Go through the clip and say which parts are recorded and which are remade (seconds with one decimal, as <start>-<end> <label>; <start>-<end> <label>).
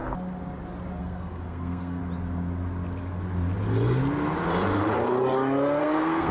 0.0-1.0 recorded; 1.0-2.0 remade; 2.0-5.8 recorded; 5.8-6.3 remade